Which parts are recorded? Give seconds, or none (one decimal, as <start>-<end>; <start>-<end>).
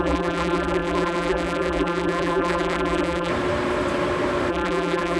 3.3-4.5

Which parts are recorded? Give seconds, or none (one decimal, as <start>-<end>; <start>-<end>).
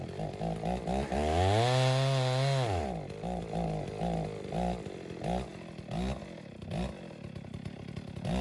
0.0-8.4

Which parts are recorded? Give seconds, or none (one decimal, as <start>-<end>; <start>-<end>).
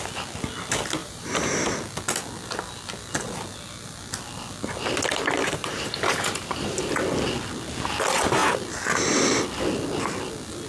0.0-1.0; 1.6-5.4; 6.9-10.7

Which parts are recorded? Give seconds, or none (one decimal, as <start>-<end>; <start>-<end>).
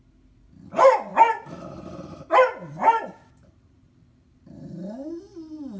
0.0-2.8; 5.1-5.8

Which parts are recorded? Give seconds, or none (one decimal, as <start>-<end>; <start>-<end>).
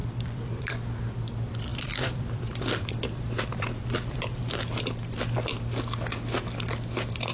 0.7-1.7; 4.2-7.3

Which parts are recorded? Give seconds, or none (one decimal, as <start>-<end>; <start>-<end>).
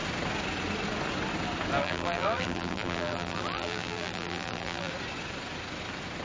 0.0-1.8; 4.9-6.2